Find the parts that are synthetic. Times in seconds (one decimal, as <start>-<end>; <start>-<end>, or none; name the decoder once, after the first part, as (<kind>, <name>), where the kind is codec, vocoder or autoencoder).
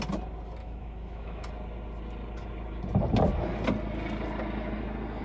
0.6-1.5 (autoencoder, DAC-VAE)